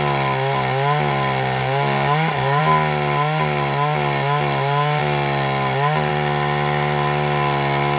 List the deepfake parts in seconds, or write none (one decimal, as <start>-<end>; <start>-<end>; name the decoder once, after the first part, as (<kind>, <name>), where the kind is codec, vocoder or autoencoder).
1.6-2.6 (codec, DAC)